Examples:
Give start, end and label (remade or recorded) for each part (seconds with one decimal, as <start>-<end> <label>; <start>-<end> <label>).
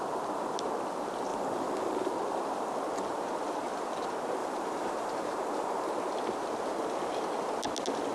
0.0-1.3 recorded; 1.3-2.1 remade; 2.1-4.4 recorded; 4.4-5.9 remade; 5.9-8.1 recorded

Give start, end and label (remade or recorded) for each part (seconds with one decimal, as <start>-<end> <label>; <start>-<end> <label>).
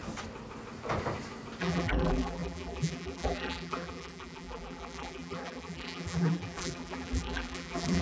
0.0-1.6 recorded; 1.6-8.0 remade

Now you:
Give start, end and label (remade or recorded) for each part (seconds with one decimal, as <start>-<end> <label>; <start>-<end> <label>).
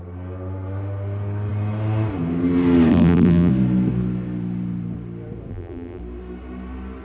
0.0-2.9 recorded; 2.9-3.5 remade; 3.5-5.5 recorded; 5.5-6.0 remade; 6.0-7.0 recorded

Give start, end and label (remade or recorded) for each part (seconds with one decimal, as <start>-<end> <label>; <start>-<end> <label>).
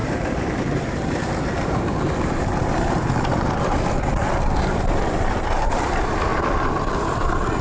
0.0-6.3 remade; 6.3-7.0 recorded; 7.0-7.6 remade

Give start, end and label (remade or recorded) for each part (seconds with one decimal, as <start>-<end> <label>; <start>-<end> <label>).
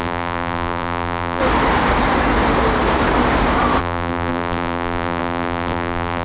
0.0-1.4 remade; 1.4-3.8 recorded; 3.8-6.2 remade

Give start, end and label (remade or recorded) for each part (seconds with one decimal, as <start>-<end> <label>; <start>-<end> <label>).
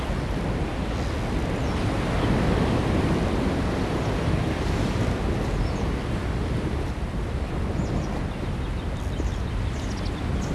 0.0-10.5 recorded